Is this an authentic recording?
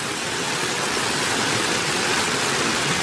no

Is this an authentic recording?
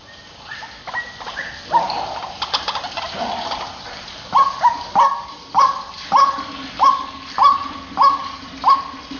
yes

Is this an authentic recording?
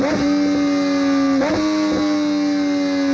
yes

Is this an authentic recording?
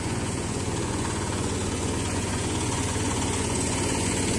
no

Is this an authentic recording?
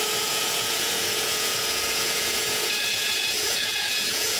no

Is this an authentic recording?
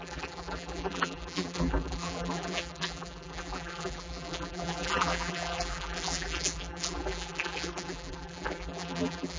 no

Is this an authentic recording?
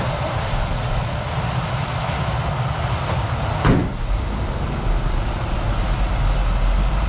yes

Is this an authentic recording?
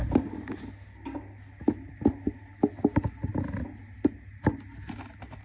yes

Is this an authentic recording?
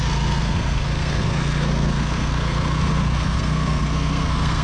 no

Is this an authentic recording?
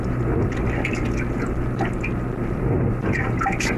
yes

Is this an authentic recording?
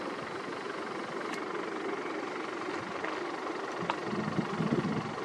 yes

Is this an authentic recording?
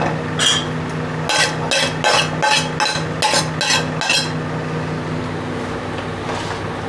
yes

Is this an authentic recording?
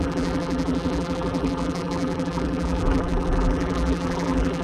no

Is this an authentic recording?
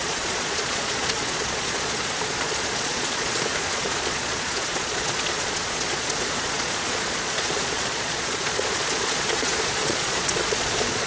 no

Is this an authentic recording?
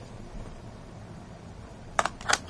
no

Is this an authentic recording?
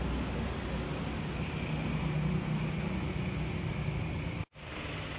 yes